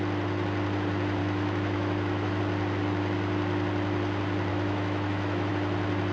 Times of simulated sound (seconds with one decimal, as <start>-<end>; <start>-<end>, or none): 1.2-2.4; 4.5-5.5